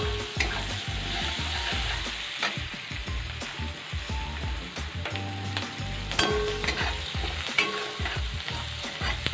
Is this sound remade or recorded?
recorded